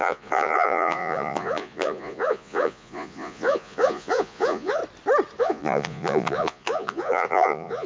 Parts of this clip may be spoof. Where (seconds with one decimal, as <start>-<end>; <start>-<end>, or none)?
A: 0.0-4.8; 5.4-7.9